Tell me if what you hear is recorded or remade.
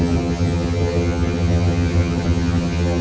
remade